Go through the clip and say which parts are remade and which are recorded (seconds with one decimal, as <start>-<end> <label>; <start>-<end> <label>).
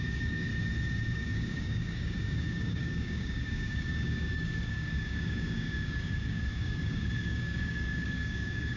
0.0-0.5 remade; 0.5-1.1 recorded; 1.1-8.8 remade